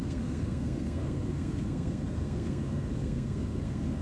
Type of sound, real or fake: fake